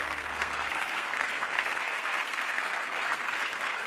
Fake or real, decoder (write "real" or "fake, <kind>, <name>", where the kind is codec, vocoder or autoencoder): fake, codec, SNAC